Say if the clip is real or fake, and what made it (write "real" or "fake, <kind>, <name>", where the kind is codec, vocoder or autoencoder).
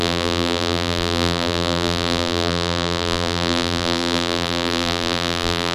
fake, vocoder, BigVGAN v2